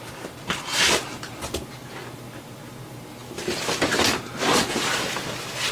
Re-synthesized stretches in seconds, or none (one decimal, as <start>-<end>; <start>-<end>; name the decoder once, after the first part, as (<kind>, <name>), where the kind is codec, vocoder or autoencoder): none

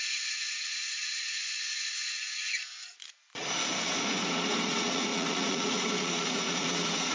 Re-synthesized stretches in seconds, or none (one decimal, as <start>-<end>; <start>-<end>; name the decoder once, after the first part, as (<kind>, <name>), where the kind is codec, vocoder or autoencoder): 0.0-2.0 (vocoder, Vocos); 4.0-7.1

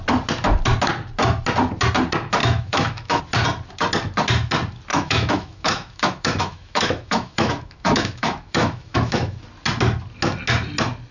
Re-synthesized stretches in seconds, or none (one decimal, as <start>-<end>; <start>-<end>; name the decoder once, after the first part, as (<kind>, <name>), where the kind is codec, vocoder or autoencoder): 2.4-3.2 (autoencoder, DAC-VAE); 4.9-9.4

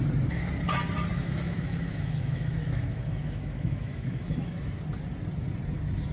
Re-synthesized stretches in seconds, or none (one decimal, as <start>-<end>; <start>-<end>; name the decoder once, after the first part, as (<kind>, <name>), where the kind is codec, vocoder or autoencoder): 1.1-4.8 (autoencoder, DAC-VAE)